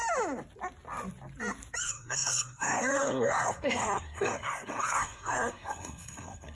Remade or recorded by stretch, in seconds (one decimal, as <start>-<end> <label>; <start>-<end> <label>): 0.0-1.8 recorded; 1.8-6.5 remade